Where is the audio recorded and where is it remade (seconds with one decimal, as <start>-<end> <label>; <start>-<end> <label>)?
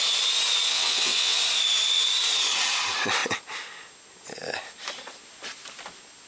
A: 0.0-0.7 recorded; 0.7-1.4 remade; 1.4-6.3 recorded